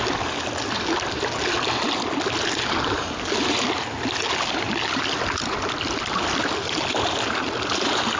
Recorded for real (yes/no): yes